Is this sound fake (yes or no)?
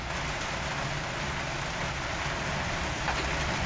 no